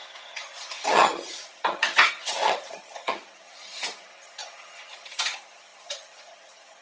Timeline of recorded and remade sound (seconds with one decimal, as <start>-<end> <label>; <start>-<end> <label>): 0.0-6.8 remade